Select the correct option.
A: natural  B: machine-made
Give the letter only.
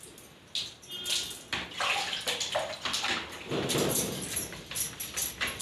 A